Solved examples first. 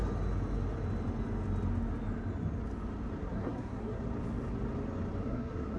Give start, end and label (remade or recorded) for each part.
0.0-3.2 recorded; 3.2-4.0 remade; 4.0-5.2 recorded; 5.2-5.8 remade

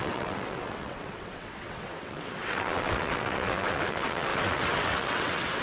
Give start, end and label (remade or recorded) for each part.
0.0-5.6 remade

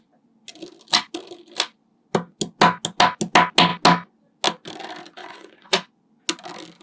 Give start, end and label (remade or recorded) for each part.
0.0-5.2 recorded; 5.2-6.0 remade; 6.0-6.8 recorded

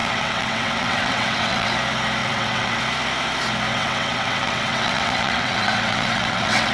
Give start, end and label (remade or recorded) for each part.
0.0-1.7 remade; 1.7-2.2 recorded; 2.2-2.8 remade; 2.8-3.7 recorded; 3.7-6.7 remade

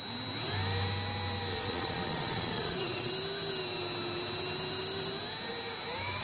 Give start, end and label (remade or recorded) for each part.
0.0-1.5 recorded; 1.5-3.1 remade; 3.1-6.2 recorded